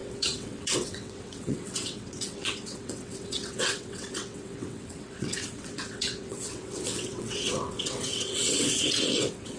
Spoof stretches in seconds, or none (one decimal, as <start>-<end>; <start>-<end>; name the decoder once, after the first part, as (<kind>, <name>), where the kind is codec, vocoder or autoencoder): 0.0-9.6 (vocoder, WaveNeXt)